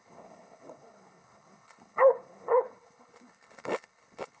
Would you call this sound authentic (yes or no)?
no